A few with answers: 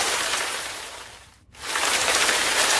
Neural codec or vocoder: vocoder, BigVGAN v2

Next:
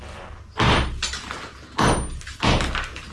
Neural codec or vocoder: none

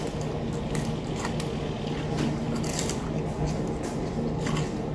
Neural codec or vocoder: none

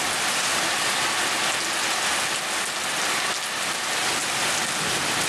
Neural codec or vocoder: none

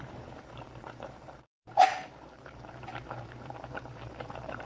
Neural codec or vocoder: vocoder, BigVGAN v2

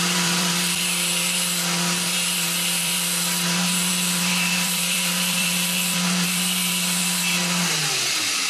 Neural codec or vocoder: vocoder, BigVGAN v2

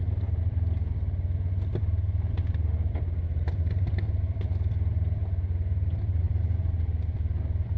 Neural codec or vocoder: vocoder, BigVGAN v2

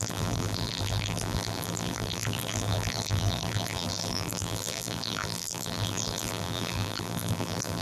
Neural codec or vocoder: vocoder, BigVGAN v2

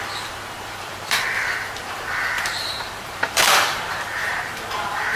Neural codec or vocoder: vocoder, BigVGAN v2